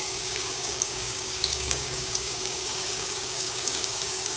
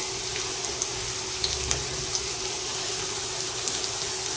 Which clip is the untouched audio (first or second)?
second